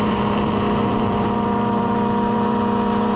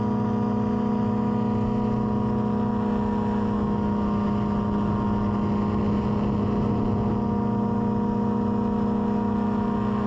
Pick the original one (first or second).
second